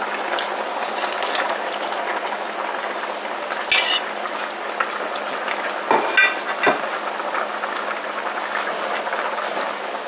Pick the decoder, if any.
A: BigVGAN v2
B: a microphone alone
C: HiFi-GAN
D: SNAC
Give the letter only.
B